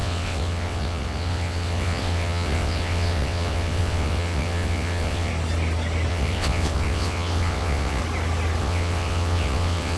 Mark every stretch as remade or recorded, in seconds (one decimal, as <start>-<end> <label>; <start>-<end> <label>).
0.0-5.3 remade; 5.3-6.1 recorded; 6.1-8.0 remade; 8.0-8.6 recorded; 8.6-10.0 remade